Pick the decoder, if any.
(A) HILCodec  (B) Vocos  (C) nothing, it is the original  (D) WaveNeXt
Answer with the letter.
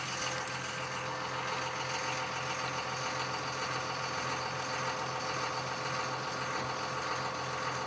C